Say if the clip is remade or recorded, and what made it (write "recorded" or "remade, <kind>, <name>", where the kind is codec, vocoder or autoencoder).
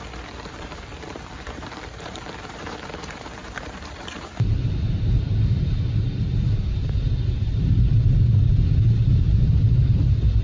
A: remade, vocoder, BigVGAN v2